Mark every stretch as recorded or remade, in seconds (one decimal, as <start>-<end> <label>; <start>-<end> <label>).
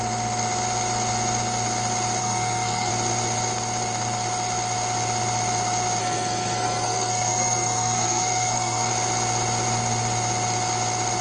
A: 0.0-2.2 recorded; 2.2-2.9 remade; 2.9-6.0 recorded; 6.0-8.9 remade; 8.9-11.2 recorded